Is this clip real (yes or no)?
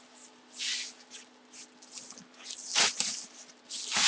yes